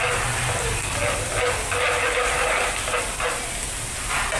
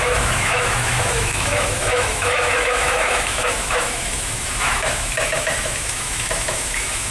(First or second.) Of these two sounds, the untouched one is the first